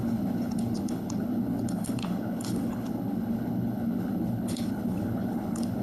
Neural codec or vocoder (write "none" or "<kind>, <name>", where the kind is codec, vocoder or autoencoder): codec, HILCodec